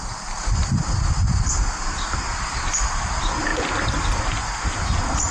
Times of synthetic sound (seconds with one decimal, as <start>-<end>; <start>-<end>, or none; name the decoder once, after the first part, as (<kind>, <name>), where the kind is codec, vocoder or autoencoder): none